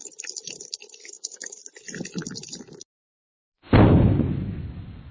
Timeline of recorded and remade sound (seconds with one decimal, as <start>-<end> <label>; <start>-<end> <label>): 0.0-1.0 recorded; 1.0-1.6 remade; 1.6-5.1 recorded